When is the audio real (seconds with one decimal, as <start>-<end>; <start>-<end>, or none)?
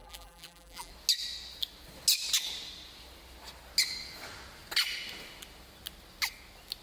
0.9-6.8